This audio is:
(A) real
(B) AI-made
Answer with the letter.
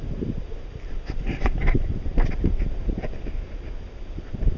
A